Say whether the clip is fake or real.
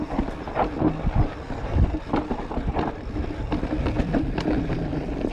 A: real